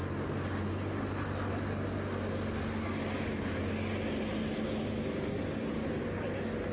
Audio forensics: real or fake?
real